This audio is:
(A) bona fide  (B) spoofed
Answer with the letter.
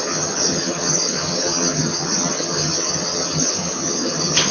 B